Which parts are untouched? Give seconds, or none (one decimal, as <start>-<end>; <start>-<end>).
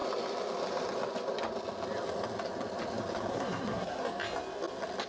0.0-3.3; 4.0-5.1